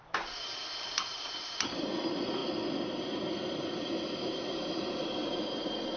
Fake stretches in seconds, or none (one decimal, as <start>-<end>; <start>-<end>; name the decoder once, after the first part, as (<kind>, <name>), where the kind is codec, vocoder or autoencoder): none

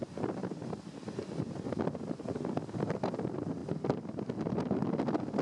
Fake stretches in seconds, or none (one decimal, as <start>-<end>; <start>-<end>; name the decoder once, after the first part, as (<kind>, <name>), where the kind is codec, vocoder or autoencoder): none

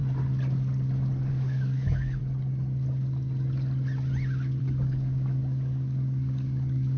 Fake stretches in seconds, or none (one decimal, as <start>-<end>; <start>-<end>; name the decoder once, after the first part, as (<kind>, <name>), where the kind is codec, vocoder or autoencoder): 1.3-2.2 (codec, DAC); 4.6-7.0

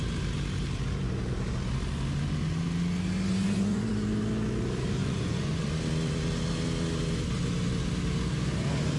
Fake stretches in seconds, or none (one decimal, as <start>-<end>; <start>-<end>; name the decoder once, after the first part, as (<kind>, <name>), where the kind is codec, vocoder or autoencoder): 3.3-3.9 (vocoder, Vocos); 5.0-5.7